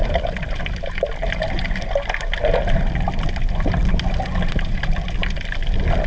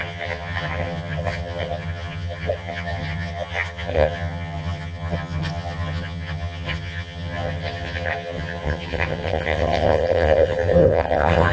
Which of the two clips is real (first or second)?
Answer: first